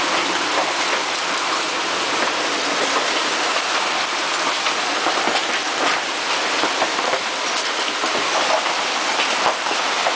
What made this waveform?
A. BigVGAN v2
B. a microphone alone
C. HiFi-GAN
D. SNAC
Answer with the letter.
B